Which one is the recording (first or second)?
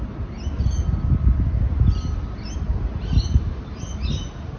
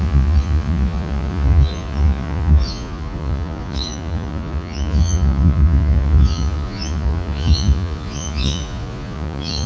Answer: first